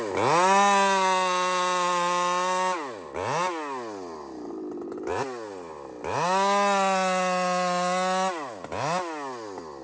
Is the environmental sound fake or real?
real